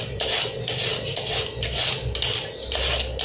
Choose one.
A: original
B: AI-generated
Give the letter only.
A